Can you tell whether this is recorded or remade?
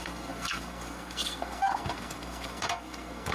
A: remade